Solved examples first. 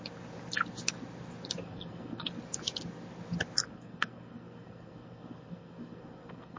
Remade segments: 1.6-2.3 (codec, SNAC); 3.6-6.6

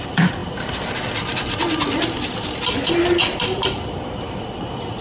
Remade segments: none

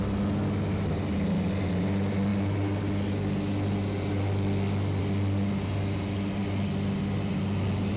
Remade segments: none

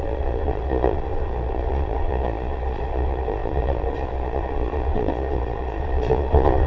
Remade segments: 0.0-6.7 (vocoder, Vocos)